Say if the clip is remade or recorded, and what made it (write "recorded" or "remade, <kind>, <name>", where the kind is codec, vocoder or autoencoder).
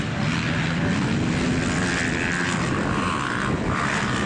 recorded